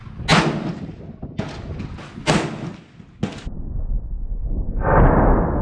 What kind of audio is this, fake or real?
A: real